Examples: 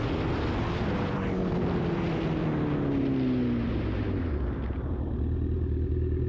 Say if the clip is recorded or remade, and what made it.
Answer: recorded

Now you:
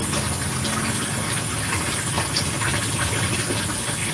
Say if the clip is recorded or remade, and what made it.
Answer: recorded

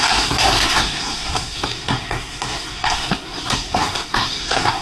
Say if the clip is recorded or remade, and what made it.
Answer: remade, codec, SNAC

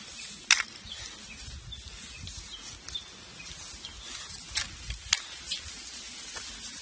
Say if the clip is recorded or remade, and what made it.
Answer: recorded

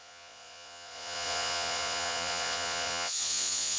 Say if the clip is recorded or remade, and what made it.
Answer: remade, vocoder, Vocos